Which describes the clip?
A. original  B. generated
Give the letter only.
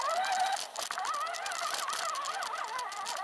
A